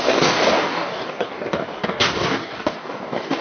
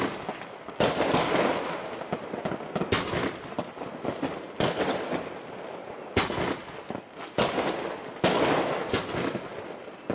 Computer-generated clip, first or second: first